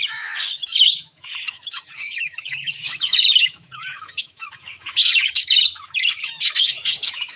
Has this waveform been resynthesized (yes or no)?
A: yes